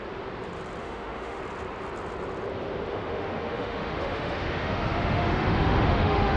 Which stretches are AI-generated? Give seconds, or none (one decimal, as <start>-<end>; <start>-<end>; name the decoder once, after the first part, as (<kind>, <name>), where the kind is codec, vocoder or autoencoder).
0.8-1.4 (autoencoder, DAC-VAE); 2.9-6.4